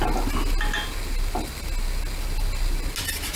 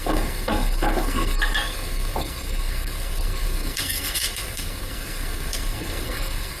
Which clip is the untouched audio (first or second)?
first